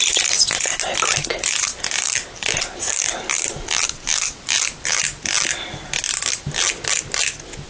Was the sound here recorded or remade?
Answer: recorded